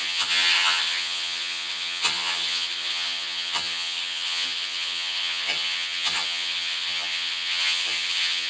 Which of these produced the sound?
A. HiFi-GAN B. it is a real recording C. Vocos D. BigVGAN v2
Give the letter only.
A